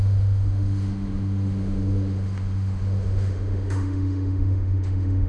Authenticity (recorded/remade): remade